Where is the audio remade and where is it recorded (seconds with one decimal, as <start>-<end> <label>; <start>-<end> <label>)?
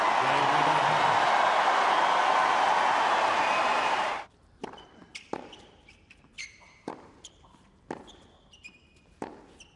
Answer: 0.0-3.7 recorded; 3.7-8.0 remade; 8.0-9.8 recorded